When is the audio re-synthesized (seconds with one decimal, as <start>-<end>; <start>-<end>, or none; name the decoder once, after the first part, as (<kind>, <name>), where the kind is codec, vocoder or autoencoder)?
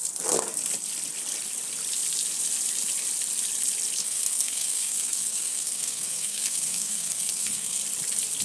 4.0-7.8 (codec, SNAC)